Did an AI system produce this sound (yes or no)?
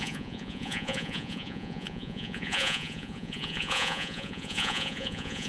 yes